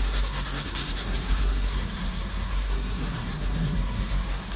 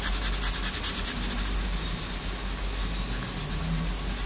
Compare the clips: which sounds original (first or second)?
second